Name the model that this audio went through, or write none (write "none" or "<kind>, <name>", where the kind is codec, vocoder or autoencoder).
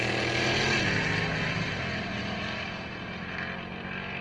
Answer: none